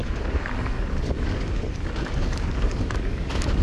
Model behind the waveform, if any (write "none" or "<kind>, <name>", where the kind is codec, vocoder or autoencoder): codec, DAC